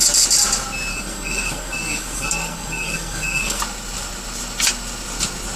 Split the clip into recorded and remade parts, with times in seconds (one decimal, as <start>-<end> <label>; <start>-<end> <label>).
0.0-0.9 recorded; 0.9-3.6 remade; 3.6-5.6 recorded

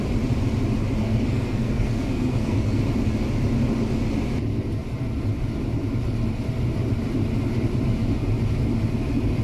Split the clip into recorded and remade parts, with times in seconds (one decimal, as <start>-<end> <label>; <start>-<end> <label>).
0.0-1.0 recorded; 1.0-2.8 remade; 2.8-9.4 recorded